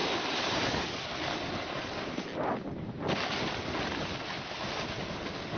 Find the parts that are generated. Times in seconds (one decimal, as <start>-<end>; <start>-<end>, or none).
none